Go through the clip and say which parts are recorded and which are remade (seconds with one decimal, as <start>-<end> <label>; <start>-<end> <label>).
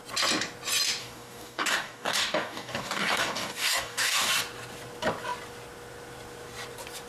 0.0-1.0 recorded; 1.0-4.3 remade; 4.3-7.1 recorded